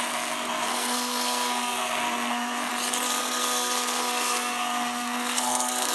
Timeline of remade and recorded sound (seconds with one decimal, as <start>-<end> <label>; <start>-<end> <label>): 0.0-2.7 remade; 2.7-3.2 recorded; 3.2-5.9 remade